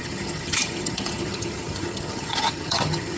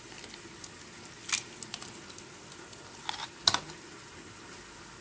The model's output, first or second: first